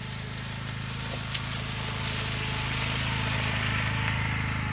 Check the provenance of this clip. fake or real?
real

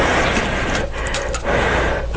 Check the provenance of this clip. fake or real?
real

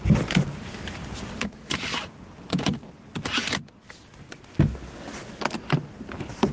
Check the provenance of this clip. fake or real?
real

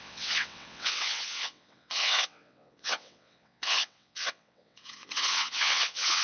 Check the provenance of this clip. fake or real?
fake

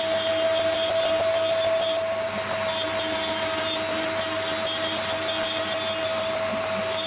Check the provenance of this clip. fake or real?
real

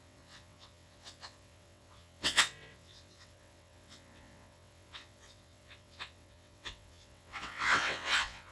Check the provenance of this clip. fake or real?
fake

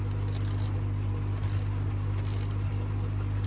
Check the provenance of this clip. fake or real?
real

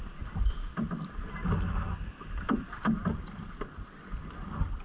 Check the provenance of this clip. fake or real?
real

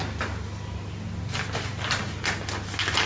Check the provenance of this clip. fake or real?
real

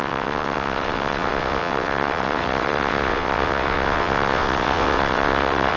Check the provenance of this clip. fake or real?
fake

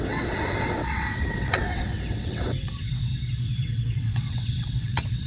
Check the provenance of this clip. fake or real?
fake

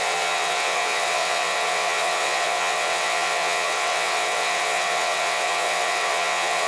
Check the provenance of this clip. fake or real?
fake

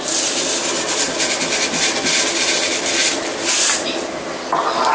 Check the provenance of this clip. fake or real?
real